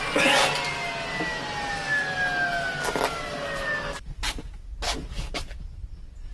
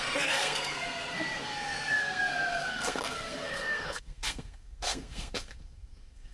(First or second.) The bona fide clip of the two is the first